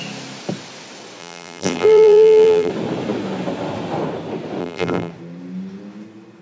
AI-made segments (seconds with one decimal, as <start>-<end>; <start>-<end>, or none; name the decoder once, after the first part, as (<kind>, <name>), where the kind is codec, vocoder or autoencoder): 1.2-2.7 (vocoder, BigVGAN v2); 4.6-5.1